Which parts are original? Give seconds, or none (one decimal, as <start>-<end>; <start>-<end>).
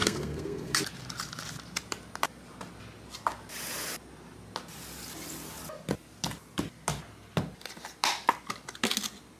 0.8-9.4